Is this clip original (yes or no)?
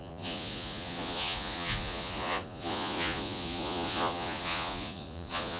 no